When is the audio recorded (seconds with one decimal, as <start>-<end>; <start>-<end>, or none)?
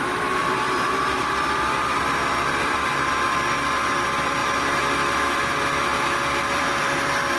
4.4-6.4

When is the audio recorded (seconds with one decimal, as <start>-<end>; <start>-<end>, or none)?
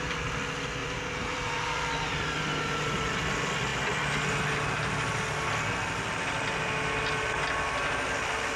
0.0-0.8; 2.1-8.6